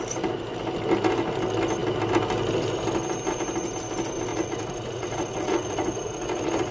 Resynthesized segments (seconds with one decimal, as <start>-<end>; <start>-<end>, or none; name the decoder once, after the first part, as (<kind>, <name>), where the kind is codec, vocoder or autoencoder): 4.3-6.7 (vocoder, Vocos)

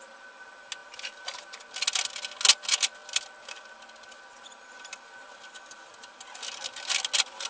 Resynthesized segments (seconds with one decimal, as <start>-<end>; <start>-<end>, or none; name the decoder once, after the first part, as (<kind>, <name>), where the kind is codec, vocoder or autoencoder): none

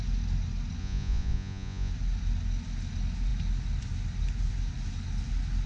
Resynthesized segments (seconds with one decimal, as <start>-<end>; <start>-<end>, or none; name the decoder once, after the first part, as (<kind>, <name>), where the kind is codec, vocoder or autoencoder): 0.8-1.9 (vocoder, Vocos)

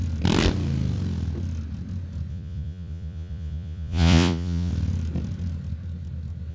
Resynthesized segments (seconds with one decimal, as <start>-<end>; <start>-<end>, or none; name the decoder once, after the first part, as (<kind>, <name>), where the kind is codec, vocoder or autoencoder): 2.3-4.7 (vocoder, Vocos)

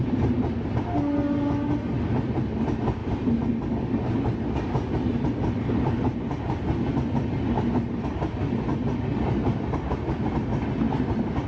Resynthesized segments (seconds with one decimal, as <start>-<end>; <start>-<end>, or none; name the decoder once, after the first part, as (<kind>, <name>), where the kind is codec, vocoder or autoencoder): none

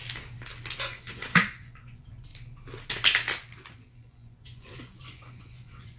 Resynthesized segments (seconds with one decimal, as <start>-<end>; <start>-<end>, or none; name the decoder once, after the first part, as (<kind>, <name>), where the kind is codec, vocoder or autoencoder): 0.8-2.3 (vocoder, Vocos); 3.7-6.0

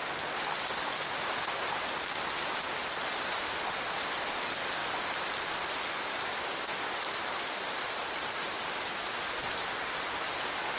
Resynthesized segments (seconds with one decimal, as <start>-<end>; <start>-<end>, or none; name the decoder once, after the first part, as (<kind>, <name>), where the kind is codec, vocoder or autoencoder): none